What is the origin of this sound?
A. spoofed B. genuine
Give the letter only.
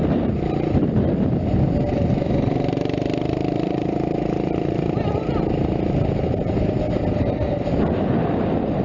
B